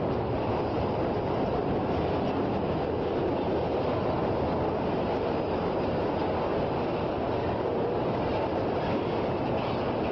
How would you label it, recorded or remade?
recorded